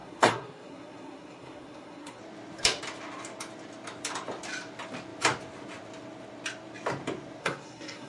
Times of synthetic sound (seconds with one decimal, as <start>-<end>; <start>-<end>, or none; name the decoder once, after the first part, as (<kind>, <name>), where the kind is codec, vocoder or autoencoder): 0.0-2.2 (codec, SNAC); 7.4-8.1